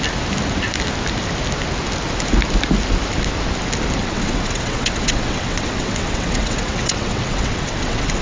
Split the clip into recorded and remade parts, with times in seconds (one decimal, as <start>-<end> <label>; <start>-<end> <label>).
0.0-4.0 recorded; 4.0-8.2 remade